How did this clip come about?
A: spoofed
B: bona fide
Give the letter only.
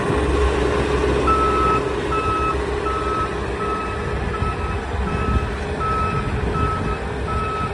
B